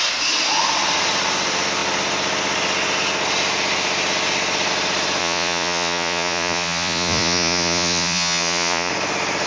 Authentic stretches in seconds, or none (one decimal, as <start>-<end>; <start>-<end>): 0.0-5.2; 8.9-9.5